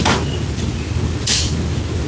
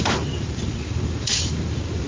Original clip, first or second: first